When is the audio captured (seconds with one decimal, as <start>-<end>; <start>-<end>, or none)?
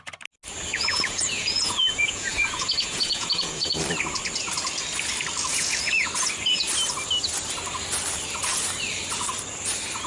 0.0-0.7; 3.8-5.5; 6.1-10.1